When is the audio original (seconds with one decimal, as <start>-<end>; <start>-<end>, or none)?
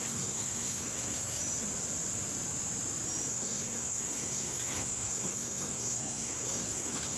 1.4-3.3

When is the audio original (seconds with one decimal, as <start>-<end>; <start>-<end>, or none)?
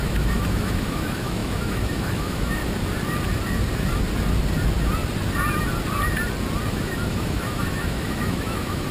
2.6-6.7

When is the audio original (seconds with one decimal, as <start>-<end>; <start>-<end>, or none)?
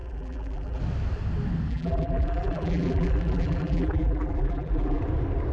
0.8-1.7; 5.0-5.5